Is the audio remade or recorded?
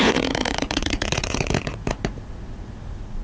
remade